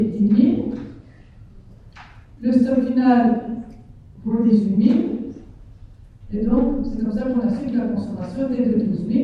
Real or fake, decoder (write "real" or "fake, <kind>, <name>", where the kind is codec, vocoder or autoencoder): fake, vocoder, BigVGAN v2